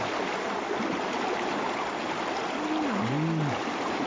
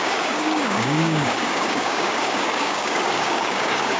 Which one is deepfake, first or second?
second